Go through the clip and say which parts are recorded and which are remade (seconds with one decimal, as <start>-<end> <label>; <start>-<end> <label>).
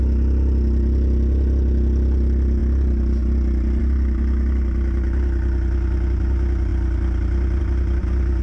0.0-8.4 recorded